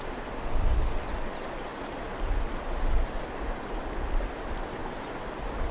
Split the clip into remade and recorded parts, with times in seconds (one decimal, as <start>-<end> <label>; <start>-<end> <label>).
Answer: 0.0-5.7 recorded